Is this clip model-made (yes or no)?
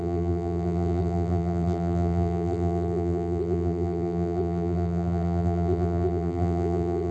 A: yes